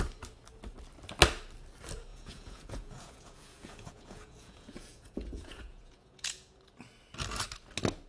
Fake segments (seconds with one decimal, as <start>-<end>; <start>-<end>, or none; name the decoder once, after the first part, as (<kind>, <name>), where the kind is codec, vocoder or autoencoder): 2.1-6.6 (vocoder, Vocos)